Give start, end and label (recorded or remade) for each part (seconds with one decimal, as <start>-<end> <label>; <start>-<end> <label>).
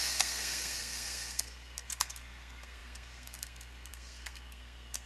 0.0-5.1 remade